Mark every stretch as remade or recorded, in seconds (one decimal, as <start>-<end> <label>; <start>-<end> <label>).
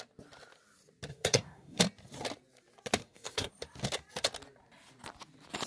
0.0-1.1 recorded; 1.1-1.8 remade; 1.8-3.0 recorded; 3.0-3.5 remade; 3.5-5.7 recorded